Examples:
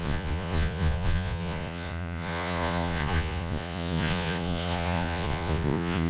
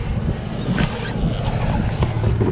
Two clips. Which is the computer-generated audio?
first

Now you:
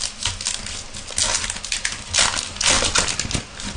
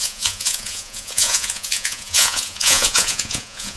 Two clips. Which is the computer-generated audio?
second